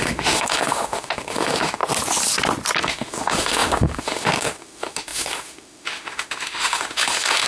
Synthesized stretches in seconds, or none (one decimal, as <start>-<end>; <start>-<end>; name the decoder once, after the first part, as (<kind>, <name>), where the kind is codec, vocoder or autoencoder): 0.0-1.8 (autoencoder, DAC-VAE); 2.8-7.5